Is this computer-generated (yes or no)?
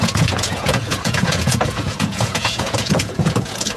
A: yes